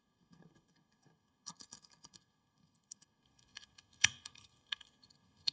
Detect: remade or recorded remade